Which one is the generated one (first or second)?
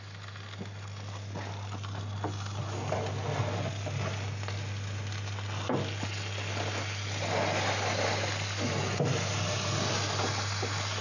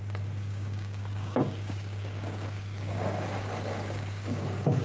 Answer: second